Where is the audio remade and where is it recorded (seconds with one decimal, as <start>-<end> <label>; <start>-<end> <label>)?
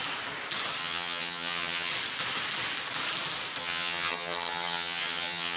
0.0-0.8 recorded; 0.8-1.9 remade; 1.9-3.6 recorded; 3.6-5.6 remade